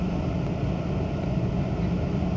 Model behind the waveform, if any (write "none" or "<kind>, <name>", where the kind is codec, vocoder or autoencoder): none